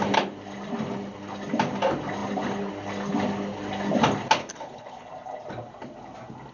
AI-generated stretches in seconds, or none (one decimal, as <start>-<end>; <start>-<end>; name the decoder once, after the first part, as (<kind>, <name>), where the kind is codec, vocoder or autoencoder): 4.4-5.1 (codec, HILCodec)